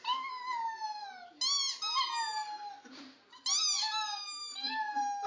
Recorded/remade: recorded